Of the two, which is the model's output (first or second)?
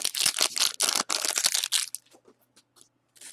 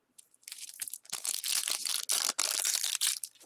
second